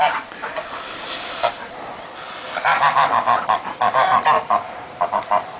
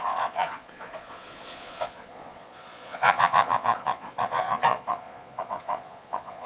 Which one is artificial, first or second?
second